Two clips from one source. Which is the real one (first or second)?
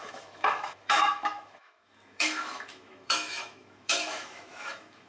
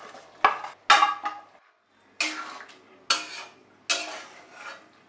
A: second